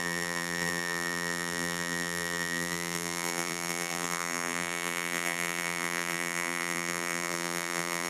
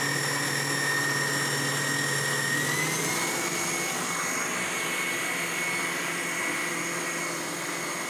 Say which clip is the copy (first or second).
first